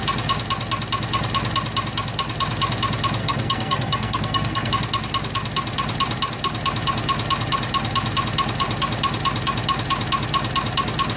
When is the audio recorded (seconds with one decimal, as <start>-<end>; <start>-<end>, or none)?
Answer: 0.0-3.2; 4.7-11.2

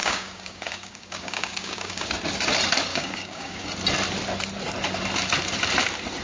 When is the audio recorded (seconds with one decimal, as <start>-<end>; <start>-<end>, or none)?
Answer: 2.1-2.9; 3.6-6.2

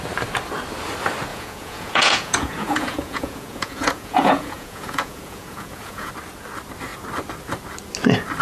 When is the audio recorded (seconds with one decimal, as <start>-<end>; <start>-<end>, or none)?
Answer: 0.0-1.3; 6.1-8.4

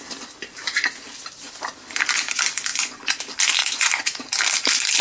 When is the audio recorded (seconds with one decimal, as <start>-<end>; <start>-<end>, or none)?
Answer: 0.0-2.7; 3.2-3.6; 4.2-5.0

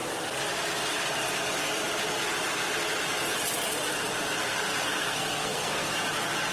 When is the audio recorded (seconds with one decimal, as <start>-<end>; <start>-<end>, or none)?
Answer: 0.0-4.4; 5.9-6.5

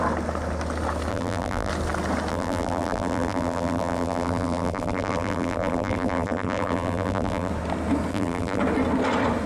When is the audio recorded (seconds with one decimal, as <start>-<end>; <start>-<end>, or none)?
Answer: 0.0-1.1; 1.7-2.3; 7.5-8.1; 8.6-9.5

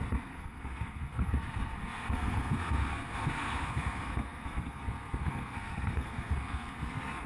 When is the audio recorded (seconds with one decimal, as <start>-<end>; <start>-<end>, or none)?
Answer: none